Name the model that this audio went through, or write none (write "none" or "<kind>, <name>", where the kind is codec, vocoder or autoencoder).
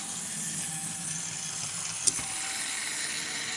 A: none